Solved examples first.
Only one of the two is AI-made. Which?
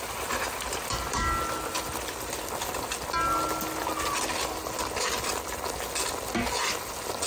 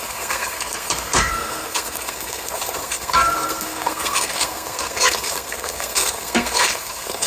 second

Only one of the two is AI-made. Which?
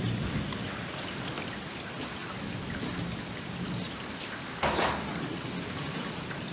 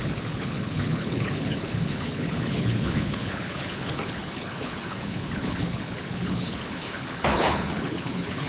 second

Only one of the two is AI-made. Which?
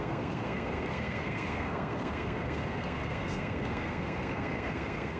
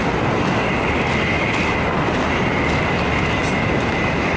first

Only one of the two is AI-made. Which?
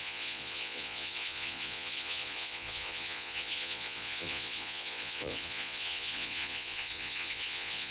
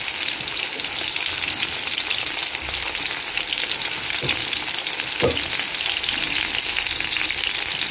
first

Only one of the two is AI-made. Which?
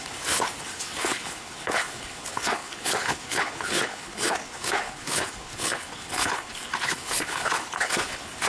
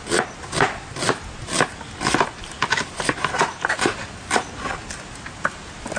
first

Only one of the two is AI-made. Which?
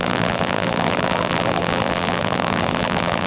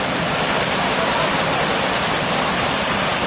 first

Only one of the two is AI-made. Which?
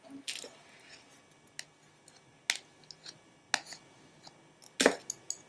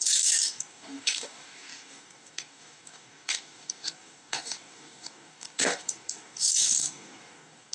second